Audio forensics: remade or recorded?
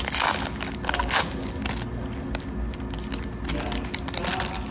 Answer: recorded